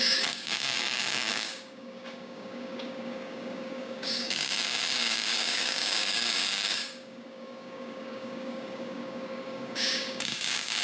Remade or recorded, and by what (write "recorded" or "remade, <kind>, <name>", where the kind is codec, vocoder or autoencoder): remade, codec, DAC